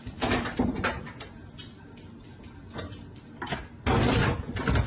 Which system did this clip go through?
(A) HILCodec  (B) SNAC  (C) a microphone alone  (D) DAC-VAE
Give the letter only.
C